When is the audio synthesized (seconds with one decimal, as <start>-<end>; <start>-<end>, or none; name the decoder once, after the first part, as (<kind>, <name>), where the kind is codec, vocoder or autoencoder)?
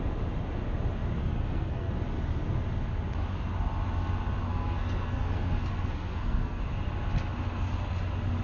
1.2-1.9 (codec, SNAC); 4.4-6.6